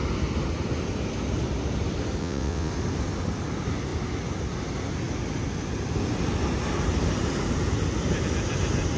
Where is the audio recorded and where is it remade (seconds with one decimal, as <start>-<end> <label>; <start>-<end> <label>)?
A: 0.0-2.2 recorded; 2.2-2.7 remade; 2.7-9.0 recorded